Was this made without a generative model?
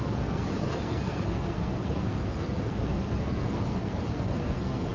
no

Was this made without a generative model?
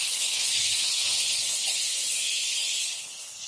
no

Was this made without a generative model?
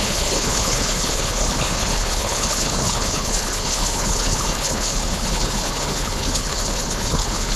no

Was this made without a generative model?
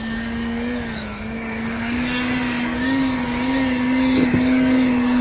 no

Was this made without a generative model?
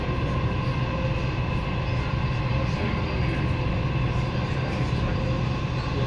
yes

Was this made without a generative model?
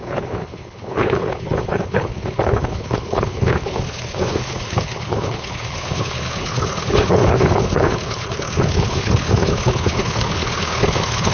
no